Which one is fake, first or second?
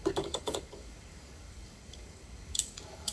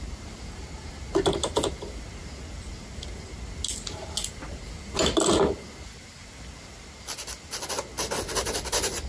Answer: first